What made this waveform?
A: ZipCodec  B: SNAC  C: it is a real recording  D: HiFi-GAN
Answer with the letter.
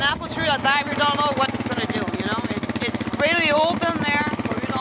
C